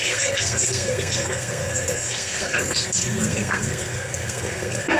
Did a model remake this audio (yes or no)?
yes